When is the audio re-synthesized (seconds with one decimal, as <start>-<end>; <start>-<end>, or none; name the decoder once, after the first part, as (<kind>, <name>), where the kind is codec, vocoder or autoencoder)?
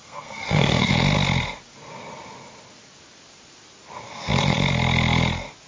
0.0-0.9 (codec, SNAC)